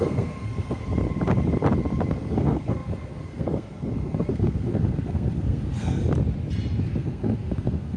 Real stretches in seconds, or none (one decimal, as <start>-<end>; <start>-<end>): 0.8-2.1; 6.0-6.8